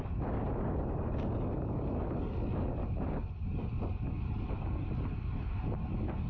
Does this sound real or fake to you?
real